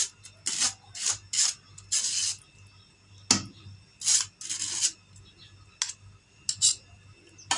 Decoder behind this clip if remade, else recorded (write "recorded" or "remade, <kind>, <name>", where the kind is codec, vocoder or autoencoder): recorded